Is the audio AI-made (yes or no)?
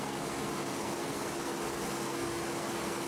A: yes